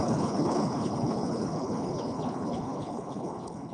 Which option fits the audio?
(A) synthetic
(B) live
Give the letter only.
A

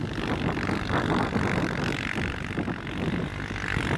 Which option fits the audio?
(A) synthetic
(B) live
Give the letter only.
B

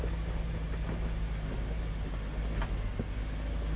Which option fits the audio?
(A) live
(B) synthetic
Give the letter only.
A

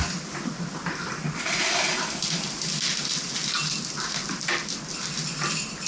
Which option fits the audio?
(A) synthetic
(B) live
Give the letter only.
B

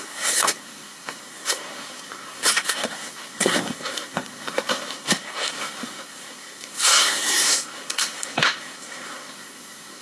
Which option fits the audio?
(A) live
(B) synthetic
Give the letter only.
B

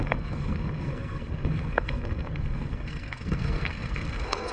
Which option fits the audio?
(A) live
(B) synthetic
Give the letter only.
B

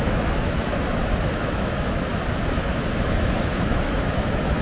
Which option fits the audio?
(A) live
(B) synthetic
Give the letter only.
B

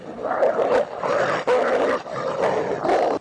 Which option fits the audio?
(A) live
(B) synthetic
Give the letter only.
A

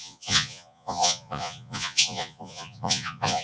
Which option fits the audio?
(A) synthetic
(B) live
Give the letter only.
A